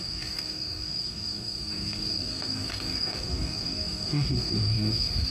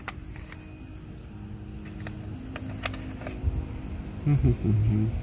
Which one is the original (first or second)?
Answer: second